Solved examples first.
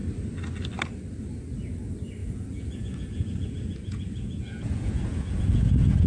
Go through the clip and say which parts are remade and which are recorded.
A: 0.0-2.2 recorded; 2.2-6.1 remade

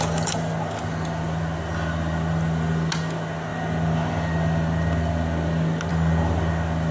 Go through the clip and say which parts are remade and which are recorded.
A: 0.0-6.9 recorded